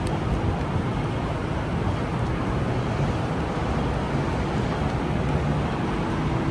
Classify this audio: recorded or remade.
recorded